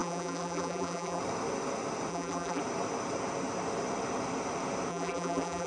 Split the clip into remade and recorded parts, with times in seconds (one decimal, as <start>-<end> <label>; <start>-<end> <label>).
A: 0.0-1.2 remade; 1.2-2.1 recorded; 2.1-2.6 remade; 2.6-4.9 recorded; 4.9-5.7 remade